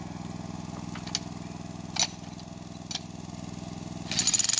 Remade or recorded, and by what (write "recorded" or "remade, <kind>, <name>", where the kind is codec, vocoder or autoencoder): recorded